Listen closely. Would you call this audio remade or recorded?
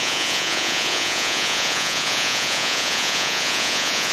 remade